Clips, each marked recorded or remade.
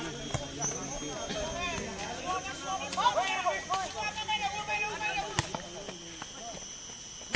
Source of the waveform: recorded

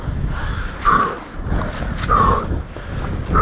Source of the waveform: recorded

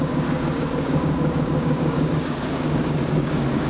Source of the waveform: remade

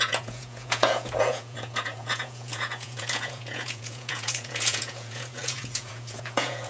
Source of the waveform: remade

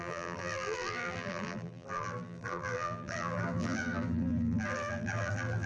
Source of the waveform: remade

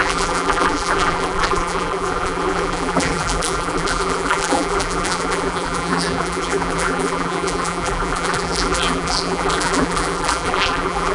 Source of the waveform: remade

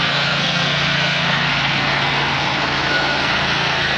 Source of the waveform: remade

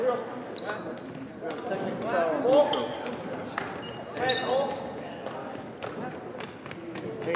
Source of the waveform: recorded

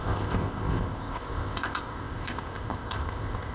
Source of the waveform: remade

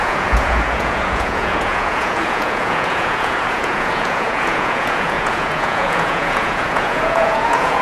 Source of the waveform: remade